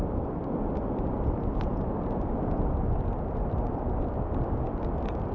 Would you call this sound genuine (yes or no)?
yes